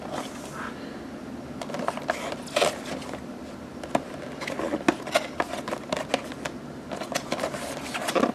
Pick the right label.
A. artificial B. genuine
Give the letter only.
B